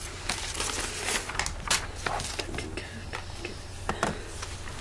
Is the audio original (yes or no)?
yes